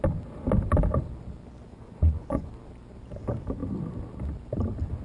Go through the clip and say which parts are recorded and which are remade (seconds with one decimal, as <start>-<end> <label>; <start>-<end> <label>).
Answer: 0.0-1.7 recorded; 1.7-2.5 remade; 2.5-5.0 recorded